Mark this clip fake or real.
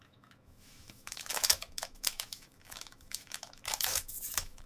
fake